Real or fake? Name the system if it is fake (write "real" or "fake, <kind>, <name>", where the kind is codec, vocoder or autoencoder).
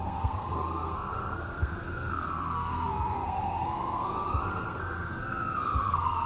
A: fake, codec, SNAC